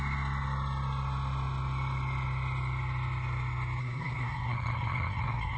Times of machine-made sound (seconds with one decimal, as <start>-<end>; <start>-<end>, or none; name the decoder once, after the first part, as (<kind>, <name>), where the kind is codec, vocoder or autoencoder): 3.8-5.6 (codec, SNAC)